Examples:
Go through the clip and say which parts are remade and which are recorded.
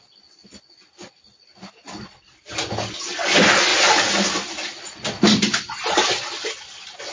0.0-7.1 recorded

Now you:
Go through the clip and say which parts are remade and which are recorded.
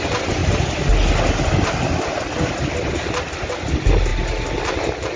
0.0-5.2 recorded